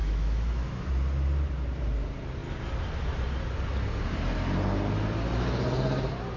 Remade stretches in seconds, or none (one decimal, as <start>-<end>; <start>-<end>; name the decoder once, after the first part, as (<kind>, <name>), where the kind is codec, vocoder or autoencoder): 0.0-0.9 (autoencoder, DAC-VAE)